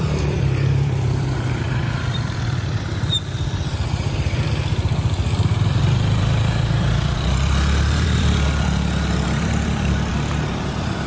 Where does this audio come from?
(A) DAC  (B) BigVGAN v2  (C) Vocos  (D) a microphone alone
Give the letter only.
B